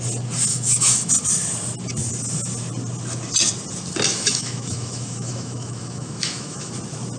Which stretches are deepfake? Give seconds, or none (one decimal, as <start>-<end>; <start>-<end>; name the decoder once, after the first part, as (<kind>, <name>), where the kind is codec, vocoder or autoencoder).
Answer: 0.5-1.1 (autoencoder, DAC-VAE); 4.1-6.7